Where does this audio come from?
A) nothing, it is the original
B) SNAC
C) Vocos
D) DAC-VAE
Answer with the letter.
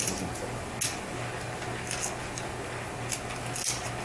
A